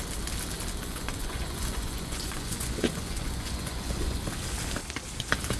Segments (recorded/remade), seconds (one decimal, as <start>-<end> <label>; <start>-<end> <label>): 0.0-0.8 recorded; 0.8-4.2 remade; 4.2-5.6 recorded